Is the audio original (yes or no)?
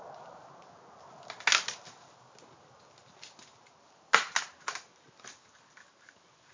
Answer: yes